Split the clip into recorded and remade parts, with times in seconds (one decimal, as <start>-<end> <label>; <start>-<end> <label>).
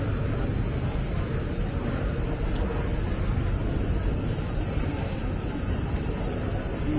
0.0-7.0 recorded